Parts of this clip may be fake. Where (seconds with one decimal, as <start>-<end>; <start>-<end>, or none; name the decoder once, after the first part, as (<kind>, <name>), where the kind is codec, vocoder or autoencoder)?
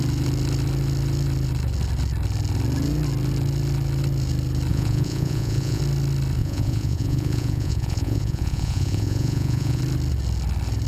4.7-5.8 (vocoder, Vocos); 6.4-9.8